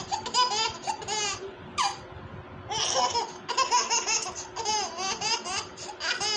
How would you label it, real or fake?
real